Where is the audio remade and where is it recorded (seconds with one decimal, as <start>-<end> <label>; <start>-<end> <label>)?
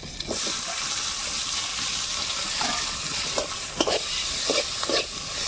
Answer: 0.0-1.7 recorded; 1.7-5.0 remade; 5.0-5.5 recorded